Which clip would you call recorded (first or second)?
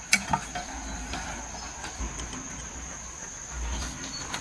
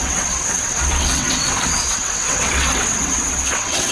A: first